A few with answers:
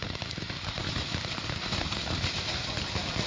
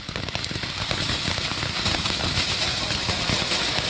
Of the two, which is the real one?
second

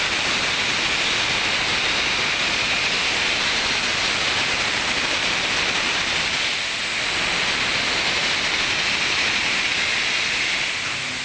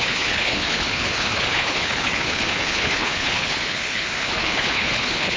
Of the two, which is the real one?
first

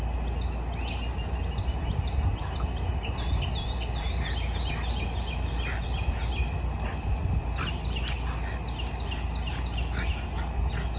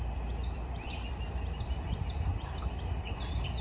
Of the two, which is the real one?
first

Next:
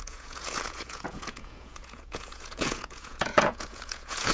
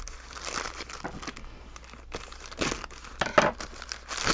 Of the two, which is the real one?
second